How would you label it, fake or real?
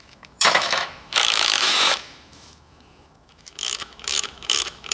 fake